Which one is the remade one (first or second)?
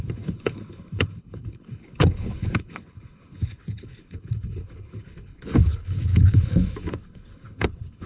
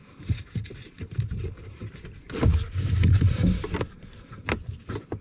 first